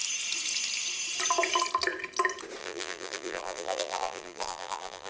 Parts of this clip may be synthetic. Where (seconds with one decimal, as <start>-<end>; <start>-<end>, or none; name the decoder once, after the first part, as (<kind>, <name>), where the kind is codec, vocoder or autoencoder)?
2.6-5.1 (vocoder, BigVGAN v2)